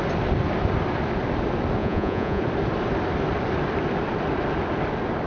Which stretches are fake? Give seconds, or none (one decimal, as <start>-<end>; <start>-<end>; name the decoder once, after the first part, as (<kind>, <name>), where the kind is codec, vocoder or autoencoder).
1.8-2.4 (vocoder, Vocos)